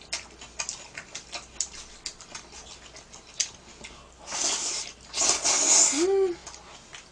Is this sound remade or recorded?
recorded